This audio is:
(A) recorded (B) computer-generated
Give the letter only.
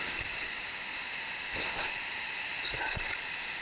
A